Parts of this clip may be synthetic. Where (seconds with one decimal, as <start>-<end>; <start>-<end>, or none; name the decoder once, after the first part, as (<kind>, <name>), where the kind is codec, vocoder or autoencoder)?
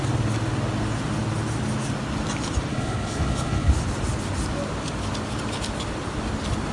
2.7-3.7 (codec, HILCodec)